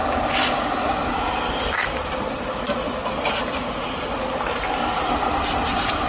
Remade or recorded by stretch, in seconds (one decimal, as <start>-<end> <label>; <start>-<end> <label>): 0.0-3.7 recorded; 3.7-4.8 remade; 4.8-5.6 recorded; 5.6-6.1 remade